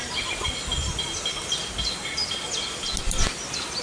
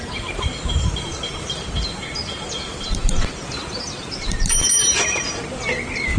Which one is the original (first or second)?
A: first